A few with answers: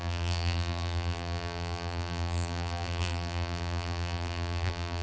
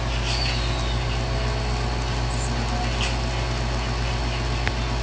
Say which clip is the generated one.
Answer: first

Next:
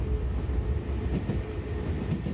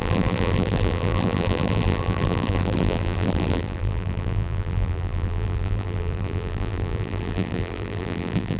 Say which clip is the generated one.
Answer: second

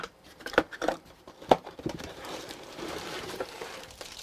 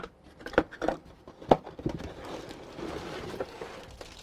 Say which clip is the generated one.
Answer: first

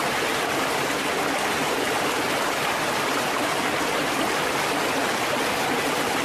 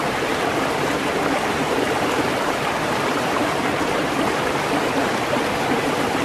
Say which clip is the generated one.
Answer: second